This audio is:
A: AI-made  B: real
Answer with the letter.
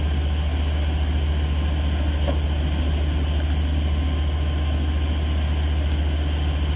B